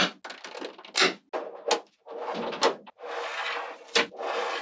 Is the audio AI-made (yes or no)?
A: no